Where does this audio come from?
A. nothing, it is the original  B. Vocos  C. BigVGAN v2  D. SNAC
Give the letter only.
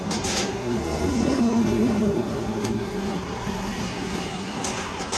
D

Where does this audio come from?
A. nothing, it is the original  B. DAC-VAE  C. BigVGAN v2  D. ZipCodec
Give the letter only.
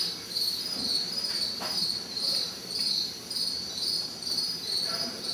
C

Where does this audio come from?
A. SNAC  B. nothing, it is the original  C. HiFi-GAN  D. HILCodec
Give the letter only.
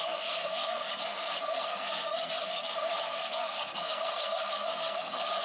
A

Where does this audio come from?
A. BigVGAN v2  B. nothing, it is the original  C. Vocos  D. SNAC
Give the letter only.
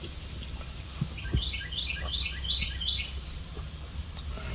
B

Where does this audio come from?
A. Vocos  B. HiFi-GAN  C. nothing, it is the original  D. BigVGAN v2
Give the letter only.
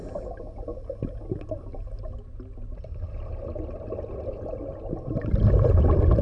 C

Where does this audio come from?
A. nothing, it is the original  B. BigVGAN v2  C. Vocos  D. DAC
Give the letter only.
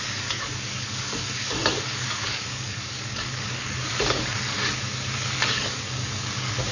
D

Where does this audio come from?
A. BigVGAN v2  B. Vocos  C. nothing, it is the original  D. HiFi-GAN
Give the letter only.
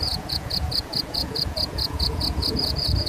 B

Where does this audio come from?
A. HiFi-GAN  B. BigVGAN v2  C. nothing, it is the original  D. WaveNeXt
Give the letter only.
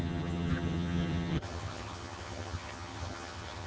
A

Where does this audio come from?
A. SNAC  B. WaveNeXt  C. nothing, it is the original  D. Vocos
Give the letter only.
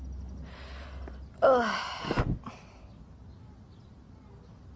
C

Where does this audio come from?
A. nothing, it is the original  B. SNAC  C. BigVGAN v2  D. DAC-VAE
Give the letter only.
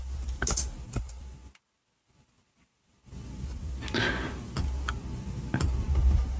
A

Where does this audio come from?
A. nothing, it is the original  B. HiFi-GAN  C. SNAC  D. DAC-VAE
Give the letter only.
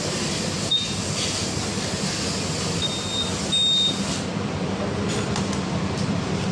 A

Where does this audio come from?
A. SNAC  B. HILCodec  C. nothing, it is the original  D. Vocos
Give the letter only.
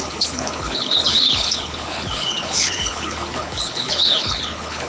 B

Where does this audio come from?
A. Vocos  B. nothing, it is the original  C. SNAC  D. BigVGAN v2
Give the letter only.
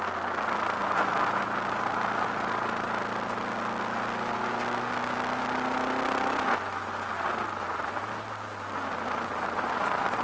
B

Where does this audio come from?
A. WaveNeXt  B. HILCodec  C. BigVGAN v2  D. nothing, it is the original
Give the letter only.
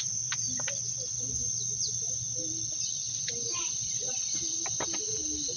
D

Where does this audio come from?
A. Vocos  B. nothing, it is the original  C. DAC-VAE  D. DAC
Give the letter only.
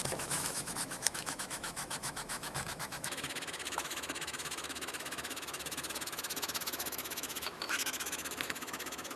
C